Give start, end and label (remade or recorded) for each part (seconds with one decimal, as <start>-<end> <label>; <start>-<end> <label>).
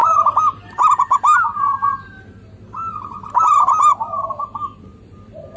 0.0-3.9 recorded; 3.9-4.8 remade; 4.8-5.6 recorded